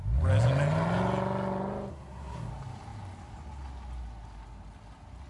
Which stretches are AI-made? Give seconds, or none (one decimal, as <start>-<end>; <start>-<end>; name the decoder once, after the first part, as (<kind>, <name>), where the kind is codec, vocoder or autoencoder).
1.9-2.5 (codec, SNAC)